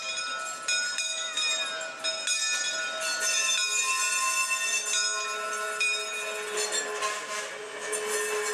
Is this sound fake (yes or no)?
no